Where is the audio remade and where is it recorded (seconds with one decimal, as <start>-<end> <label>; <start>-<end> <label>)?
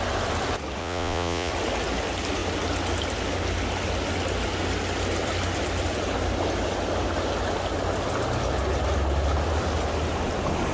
0.0-0.8 recorded; 0.8-1.5 remade; 1.5-10.7 recorded